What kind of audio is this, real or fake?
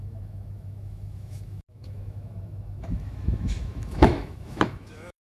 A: fake